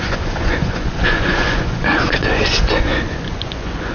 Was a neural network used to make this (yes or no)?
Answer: yes